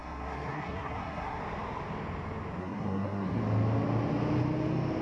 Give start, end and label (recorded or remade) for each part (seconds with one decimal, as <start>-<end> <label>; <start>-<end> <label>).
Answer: 0.0-1.4 remade; 1.4-2.6 recorded; 2.6-3.4 remade; 3.4-5.0 recorded